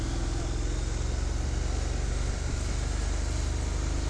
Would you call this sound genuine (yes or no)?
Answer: yes